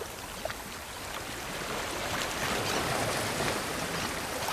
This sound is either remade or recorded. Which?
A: recorded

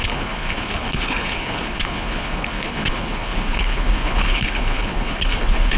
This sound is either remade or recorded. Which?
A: remade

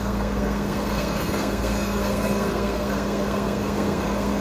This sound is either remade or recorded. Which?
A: remade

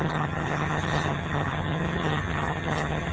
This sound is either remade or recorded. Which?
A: remade